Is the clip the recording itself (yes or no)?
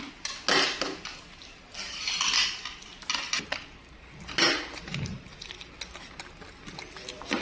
yes